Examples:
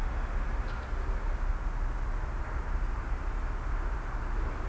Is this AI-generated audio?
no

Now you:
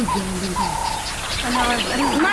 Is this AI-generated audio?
no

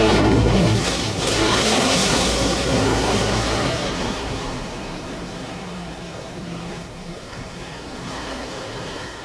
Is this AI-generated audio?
yes